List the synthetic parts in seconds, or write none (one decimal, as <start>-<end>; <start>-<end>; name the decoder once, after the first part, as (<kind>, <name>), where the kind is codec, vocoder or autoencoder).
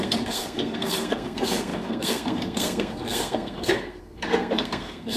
0.0-5.2 (codec, SNAC)